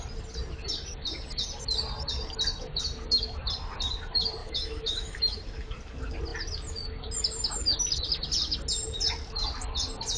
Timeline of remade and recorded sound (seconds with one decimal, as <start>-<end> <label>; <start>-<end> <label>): 0.0-4.4 recorded; 4.4-5.4 remade; 5.4-10.2 recorded